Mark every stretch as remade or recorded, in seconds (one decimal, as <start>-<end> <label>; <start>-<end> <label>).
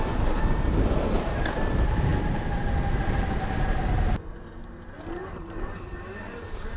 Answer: 0.0-6.8 recorded